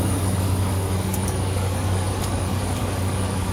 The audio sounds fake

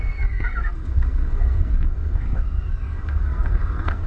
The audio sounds fake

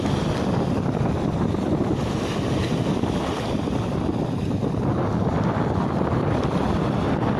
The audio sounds real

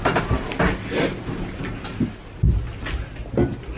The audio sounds real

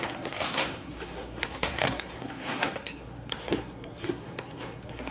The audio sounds fake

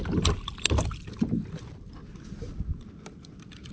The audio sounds real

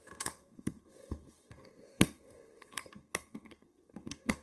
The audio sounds fake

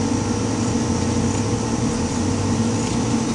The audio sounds real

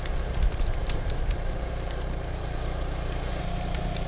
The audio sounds fake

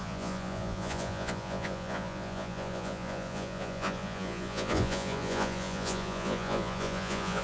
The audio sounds fake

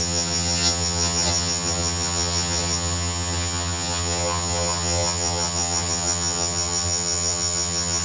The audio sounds fake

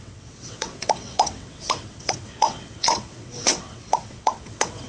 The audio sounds fake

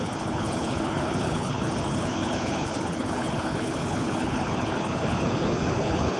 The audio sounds fake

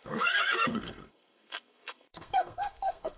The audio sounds fake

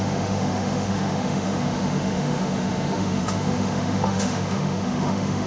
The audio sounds fake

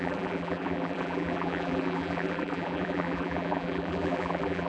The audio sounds fake